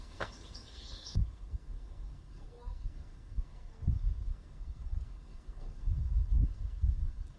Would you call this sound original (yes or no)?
no